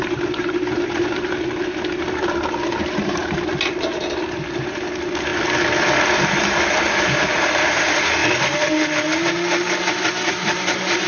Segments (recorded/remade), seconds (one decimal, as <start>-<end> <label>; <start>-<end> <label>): 0.0-5.3 remade; 5.3-6.1 recorded; 6.1-8.2 remade; 8.2-10.3 recorded; 10.3-11.1 remade